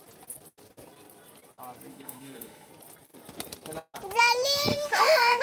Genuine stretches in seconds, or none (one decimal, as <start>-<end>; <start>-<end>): 0.0-1.9; 2.7-4.7